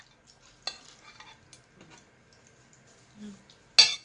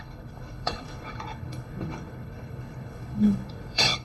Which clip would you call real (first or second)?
first